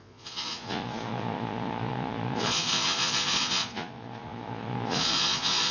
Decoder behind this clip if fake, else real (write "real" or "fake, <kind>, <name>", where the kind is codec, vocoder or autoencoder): fake, vocoder, Vocos